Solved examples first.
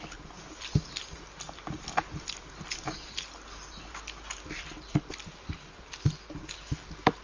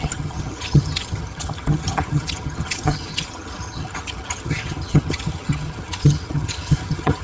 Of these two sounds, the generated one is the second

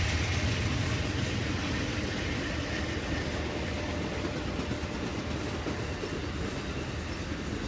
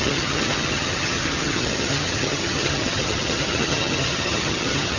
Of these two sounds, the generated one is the second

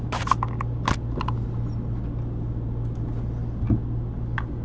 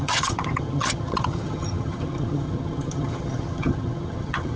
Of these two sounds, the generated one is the second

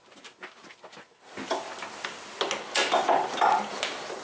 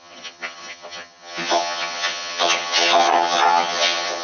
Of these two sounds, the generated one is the second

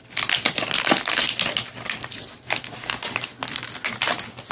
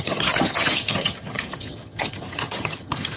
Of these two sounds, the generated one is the second